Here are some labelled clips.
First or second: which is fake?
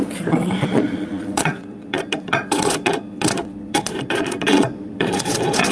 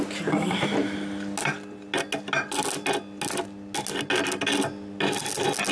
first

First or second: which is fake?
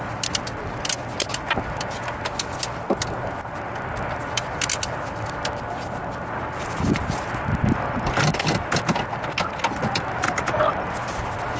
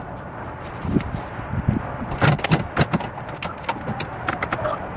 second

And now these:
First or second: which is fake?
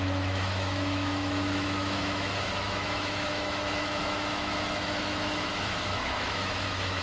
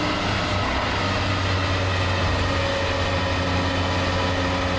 first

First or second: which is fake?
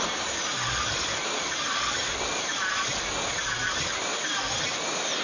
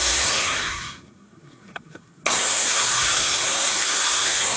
second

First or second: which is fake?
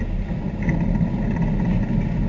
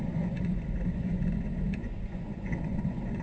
second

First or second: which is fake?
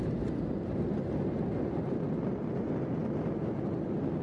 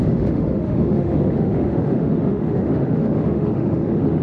second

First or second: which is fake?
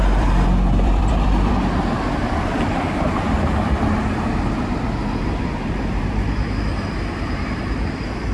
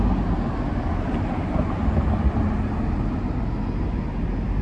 first